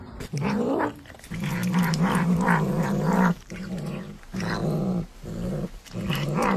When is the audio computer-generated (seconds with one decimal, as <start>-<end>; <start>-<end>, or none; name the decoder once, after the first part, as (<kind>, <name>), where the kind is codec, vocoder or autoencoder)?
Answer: 0.0-4.6 (vocoder, BigVGAN v2); 6.1-6.6